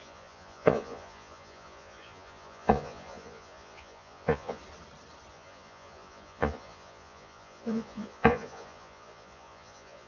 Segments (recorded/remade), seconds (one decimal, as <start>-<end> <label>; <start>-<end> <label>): 0.0-4.6 remade; 4.6-5.3 recorded; 5.3-10.1 remade